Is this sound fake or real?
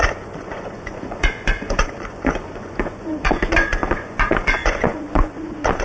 fake